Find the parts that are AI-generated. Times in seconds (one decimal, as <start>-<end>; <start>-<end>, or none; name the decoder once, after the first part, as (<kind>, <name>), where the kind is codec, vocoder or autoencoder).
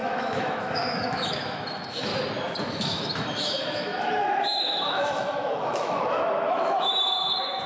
0.0-2.1 (autoencoder, DAC-VAE); 2.6-7.7